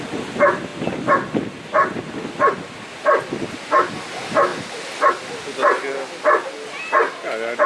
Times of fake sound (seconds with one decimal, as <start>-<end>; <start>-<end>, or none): none